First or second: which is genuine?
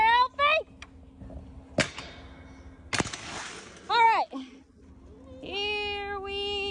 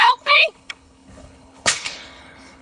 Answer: first